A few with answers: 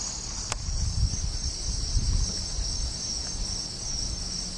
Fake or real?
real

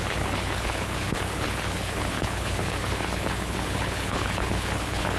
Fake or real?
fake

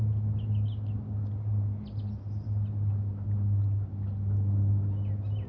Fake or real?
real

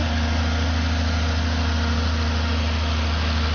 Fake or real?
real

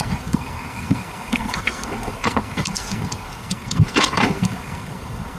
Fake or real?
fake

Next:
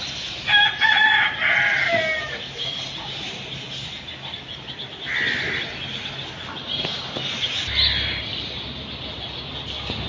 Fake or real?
real